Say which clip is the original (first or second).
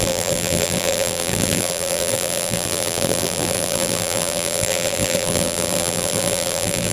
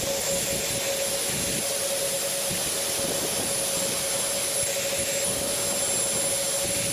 second